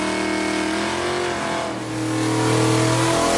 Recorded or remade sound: recorded